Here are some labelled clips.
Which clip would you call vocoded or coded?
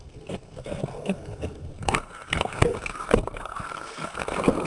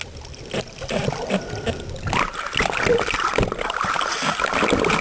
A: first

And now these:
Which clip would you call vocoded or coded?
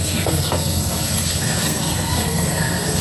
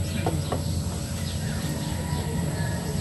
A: first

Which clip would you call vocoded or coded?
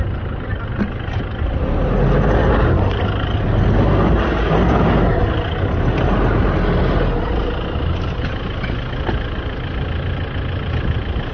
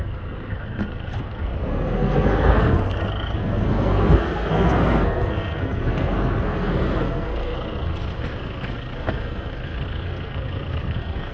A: second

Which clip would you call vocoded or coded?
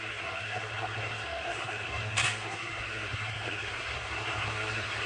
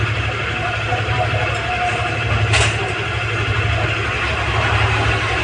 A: first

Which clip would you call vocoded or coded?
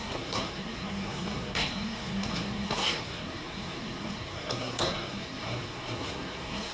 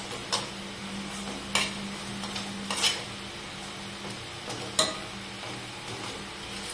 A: first